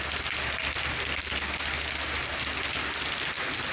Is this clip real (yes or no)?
yes